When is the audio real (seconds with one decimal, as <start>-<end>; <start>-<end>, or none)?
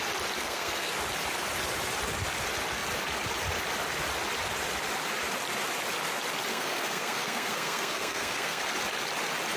0.0-0.4; 0.9-6.5; 8.6-9.6